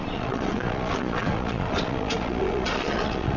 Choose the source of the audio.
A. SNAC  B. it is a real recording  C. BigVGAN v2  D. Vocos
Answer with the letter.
D